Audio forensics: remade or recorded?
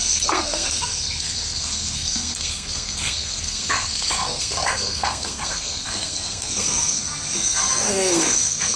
remade